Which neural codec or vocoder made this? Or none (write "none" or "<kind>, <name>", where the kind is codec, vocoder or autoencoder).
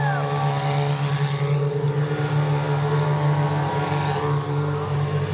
none